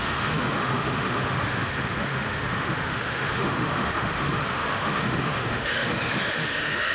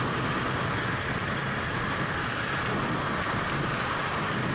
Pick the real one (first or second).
second